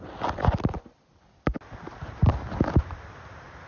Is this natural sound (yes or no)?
yes